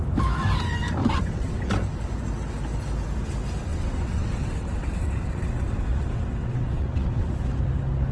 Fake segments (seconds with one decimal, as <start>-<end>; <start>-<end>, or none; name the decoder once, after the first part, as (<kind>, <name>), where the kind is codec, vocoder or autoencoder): 1.0-1.7 (vocoder, WaveNeXt); 3.7-7.3